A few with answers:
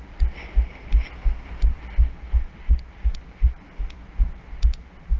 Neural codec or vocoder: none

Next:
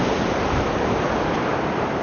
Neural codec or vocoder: none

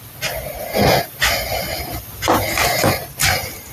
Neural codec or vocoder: none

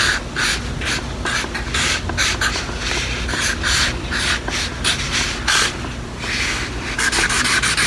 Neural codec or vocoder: none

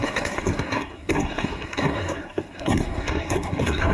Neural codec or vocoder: codec, SNAC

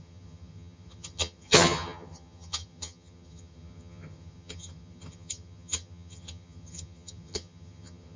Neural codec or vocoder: vocoder, HiFi-GAN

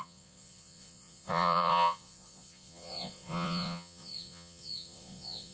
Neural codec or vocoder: vocoder, Vocos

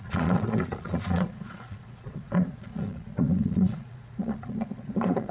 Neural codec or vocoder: vocoder, Vocos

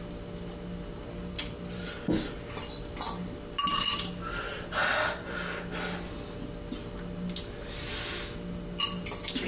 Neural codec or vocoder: none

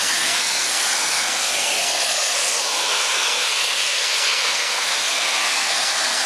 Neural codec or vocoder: codec, SNAC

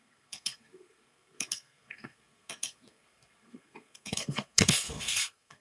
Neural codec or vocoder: codec, SNAC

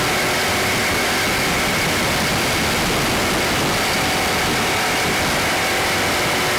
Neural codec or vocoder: none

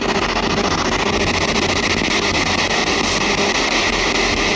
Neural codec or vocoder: none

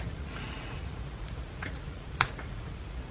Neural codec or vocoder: vocoder, Vocos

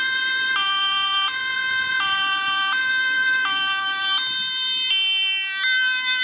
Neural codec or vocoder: none